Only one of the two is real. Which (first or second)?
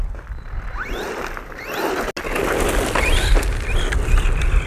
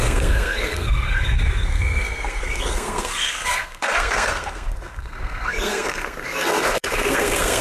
first